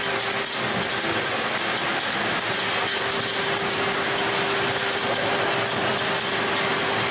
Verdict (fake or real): real